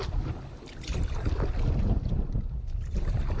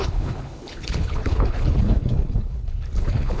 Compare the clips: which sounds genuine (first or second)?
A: first